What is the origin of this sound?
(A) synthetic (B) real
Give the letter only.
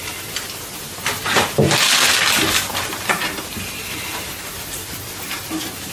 B